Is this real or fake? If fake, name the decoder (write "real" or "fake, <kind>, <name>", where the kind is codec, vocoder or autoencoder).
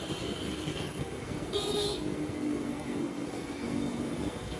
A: fake, codec, SNAC